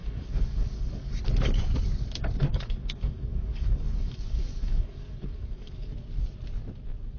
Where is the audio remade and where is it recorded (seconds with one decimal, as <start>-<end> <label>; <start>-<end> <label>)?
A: 0.0-1.1 remade; 1.1-2.5 recorded; 2.5-5.9 remade; 5.9-7.2 recorded